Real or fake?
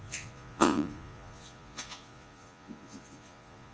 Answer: fake